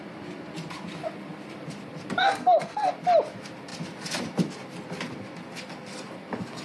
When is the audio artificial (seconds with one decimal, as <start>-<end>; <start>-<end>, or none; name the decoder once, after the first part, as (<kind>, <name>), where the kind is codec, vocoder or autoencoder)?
2.2-2.9 (codec, SNAC)